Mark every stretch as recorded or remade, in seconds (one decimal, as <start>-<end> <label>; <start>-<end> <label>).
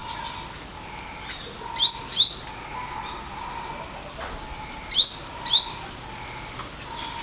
0.0-7.2 recorded